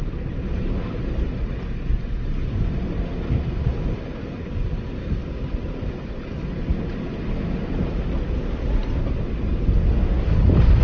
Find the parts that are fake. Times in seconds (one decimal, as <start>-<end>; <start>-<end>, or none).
none